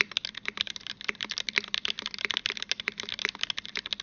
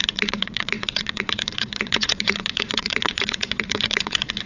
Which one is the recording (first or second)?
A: first